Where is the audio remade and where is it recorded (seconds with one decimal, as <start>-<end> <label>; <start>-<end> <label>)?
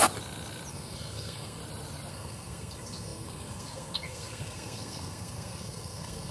0.0-0.7 recorded; 0.7-1.6 remade; 1.6-2.1 recorded; 2.1-6.3 remade